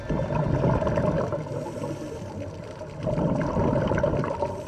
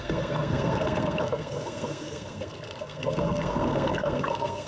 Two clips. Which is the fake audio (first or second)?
second